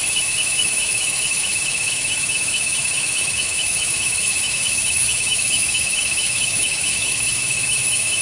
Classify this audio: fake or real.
fake